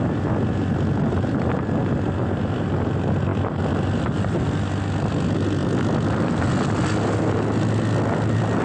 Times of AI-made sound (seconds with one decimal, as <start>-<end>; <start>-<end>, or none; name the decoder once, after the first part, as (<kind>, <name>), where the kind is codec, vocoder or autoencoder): none